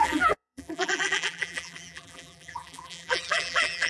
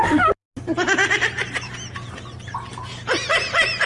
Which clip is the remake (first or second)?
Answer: first